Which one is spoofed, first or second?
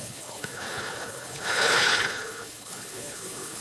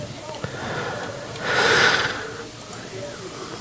first